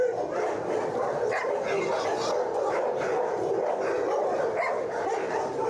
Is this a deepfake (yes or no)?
no